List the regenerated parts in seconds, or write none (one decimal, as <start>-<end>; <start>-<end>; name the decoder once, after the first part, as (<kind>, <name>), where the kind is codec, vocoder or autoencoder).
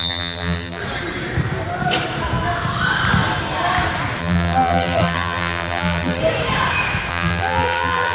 0.0-0.8 (vocoder, BigVGAN v2); 4.2-6.2; 7.1-8.1